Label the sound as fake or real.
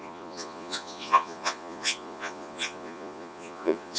fake